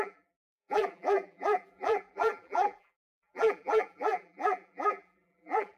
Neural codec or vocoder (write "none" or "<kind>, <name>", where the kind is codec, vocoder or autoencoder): vocoder, BigVGAN v2